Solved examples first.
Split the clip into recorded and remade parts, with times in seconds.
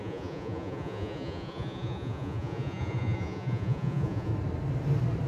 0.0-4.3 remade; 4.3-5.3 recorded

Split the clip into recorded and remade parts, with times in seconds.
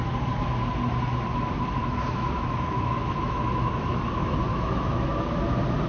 0.0-1.8 recorded; 1.8-3.8 remade; 3.8-4.5 recorded; 4.5-5.1 remade; 5.1-5.9 recorded